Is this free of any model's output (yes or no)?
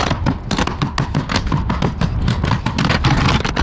yes